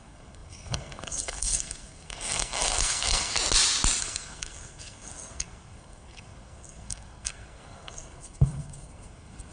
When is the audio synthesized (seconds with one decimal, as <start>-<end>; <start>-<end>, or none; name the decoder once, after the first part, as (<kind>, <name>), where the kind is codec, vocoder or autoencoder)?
0.0-3.3 (codec, SNAC); 4.0-9.5